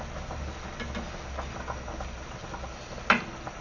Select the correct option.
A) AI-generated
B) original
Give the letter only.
B